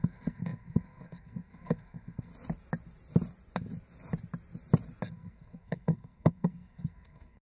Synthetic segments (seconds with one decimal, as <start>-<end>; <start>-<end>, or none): 0.0-2.3; 5.1-7.5